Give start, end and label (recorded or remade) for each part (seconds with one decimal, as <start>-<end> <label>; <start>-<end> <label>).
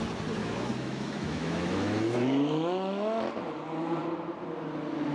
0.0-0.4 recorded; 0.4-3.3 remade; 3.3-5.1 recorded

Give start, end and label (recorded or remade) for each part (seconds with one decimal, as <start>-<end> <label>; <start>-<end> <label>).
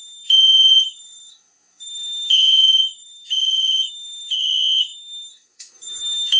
0.0-6.4 remade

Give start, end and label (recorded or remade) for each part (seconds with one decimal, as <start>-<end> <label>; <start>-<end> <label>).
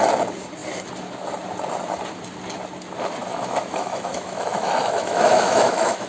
0.0-3.3 recorded; 3.3-6.1 remade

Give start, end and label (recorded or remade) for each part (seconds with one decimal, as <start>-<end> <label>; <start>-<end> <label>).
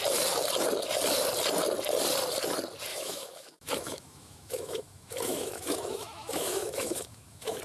0.0-2.9 recorded; 2.9-7.6 remade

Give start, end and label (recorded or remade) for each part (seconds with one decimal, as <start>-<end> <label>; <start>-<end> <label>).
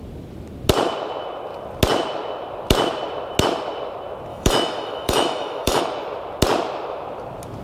0.0-4.3 recorded; 4.3-5.8 remade; 5.8-7.6 recorded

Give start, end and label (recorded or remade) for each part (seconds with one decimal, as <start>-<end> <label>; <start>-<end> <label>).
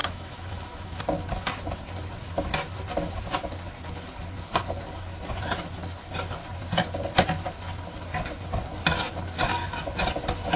0.0-1.0 remade; 1.0-10.6 recorded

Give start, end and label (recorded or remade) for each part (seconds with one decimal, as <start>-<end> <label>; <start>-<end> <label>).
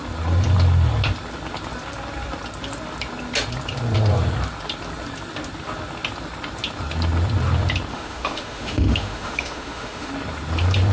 0.0-7.9 recorded; 7.9-10.1 remade; 10.1-10.9 recorded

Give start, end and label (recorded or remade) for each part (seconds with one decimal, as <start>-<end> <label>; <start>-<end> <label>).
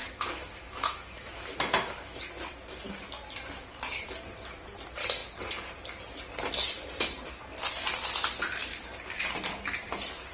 0.0-2.2 remade; 2.2-10.3 recorded